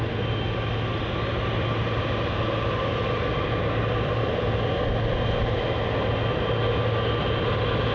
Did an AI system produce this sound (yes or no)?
no